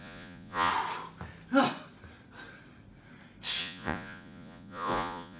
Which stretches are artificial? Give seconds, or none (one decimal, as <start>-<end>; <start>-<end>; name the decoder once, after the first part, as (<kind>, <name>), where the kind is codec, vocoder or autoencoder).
0.0-0.7 (vocoder, Vocos); 3.6-5.4